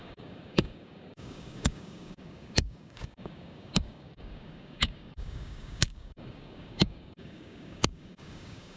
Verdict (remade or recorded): remade